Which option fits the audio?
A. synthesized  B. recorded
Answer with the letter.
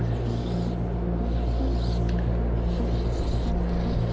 B